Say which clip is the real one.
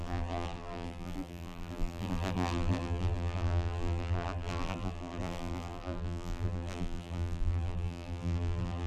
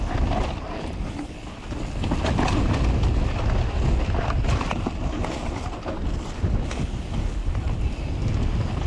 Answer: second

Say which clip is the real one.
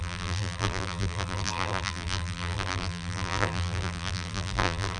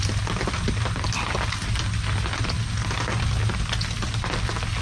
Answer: second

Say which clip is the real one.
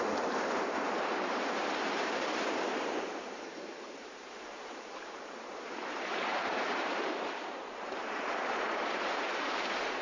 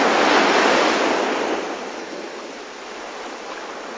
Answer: second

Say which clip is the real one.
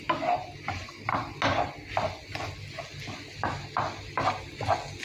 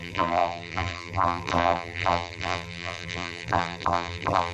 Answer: first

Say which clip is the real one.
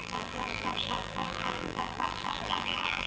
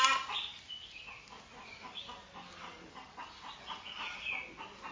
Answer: second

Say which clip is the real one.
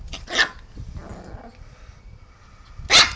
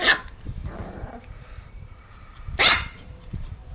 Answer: first